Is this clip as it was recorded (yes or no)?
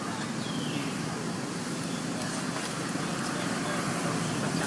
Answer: yes